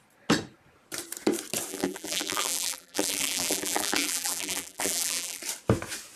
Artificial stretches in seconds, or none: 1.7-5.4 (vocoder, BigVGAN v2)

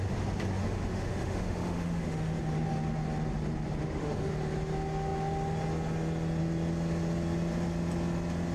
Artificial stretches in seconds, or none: 0.6-2.4 (autoencoder, DAC-VAE); 3.8-4.3

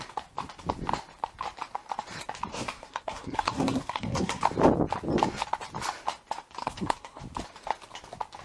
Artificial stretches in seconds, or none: 2.5-4.4 (codec, SNAC); 6.6-7.2

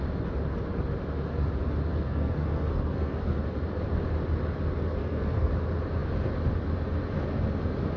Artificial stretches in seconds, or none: 1.9-3.4 (codec, SNAC); 5.0-5.5

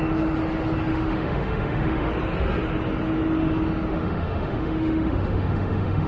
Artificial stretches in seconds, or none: 0.9-2.1 (autoencoder, DAC-VAE); 3.9-6.1

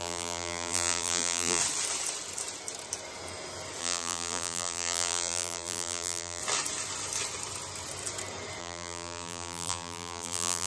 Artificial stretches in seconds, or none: 0.0-1.6 (vocoder, BigVGAN v2); 3.8-6.4; 8.6-10.7

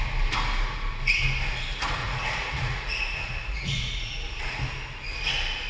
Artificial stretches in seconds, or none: 2.0-4.7 (vocoder, Vocos)

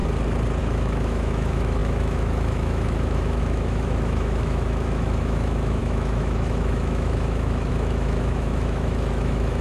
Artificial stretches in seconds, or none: 0.6-9.6 (autoencoder, DAC-VAE)